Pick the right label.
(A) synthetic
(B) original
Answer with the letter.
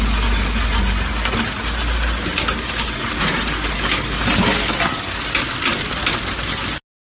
B